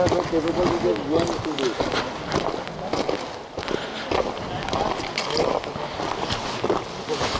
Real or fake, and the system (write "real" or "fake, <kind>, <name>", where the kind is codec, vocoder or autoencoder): real